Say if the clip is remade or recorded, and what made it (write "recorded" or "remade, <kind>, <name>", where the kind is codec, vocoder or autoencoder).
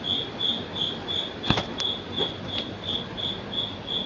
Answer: recorded